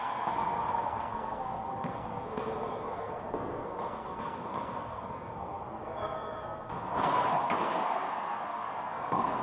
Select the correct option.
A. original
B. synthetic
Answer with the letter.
B